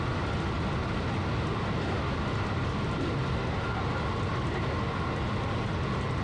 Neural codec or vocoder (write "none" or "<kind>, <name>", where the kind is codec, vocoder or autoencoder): none